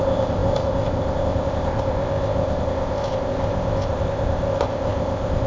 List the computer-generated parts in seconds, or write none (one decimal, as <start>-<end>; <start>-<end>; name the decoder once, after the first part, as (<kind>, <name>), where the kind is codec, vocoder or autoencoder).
0.0-5.5 (codec, ZipCodec)